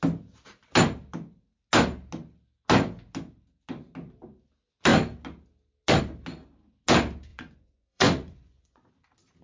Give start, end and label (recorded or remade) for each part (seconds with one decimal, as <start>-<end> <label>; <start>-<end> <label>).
0.0-7.3 recorded; 7.3-8.9 remade; 8.9-9.4 recorded